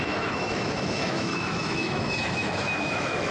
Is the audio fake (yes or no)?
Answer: yes